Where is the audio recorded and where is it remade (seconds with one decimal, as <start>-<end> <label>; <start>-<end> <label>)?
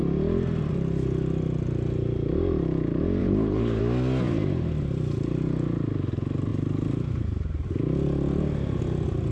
0.0-3.2 recorded; 3.2-3.8 remade; 3.8-9.3 recorded